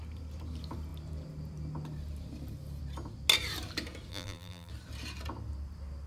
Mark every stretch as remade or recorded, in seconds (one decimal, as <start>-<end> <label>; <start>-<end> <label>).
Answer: 0.0-4.1 recorded; 4.1-4.7 remade; 4.7-6.1 recorded